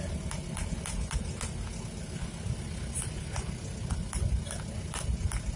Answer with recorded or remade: recorded